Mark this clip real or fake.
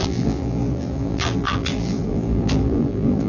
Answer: fake